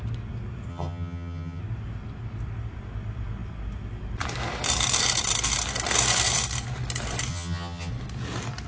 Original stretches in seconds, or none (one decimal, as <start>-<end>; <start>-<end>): 0.0-0.7; 1.6-7.3; 7.9-8.7